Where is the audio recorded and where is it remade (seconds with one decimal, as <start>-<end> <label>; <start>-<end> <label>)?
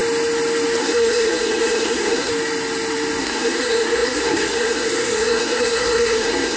0.0-0.8 recorded; 0.8-2.3 remade; 2.3-3.2 recorded; 3.2-6.6 remade